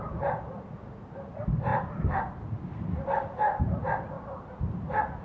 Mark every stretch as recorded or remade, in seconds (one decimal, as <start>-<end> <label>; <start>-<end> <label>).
0.0-5.2 recorded